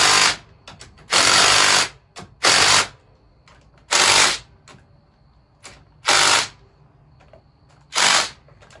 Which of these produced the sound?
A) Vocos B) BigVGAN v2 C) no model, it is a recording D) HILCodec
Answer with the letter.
C